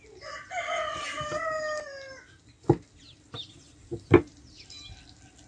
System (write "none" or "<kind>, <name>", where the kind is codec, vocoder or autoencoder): none